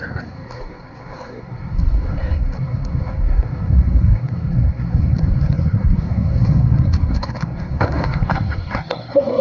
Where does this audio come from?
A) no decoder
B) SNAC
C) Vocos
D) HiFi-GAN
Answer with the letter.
B